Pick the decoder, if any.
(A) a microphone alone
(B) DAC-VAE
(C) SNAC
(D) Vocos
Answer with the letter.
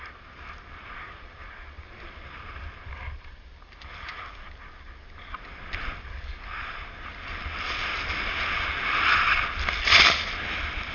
A